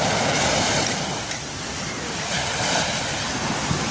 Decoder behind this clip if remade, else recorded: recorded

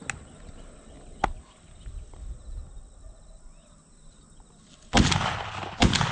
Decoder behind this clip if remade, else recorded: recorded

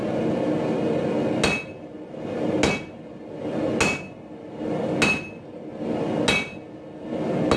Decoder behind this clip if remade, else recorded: recorded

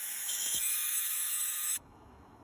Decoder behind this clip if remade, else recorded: remade, autoencoder, DAC-VAE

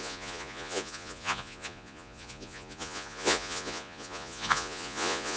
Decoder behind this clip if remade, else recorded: remade, vocoder, Vocos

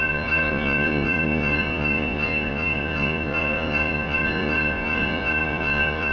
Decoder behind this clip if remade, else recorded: remade, vocoder, Vocos